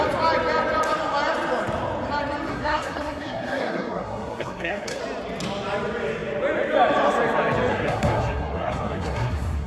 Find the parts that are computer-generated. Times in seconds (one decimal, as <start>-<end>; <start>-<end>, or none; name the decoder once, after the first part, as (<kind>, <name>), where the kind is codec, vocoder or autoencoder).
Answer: 2.5-5.0 (codec, SNAC); 7.7-9.7